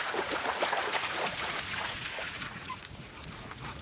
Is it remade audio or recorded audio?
remade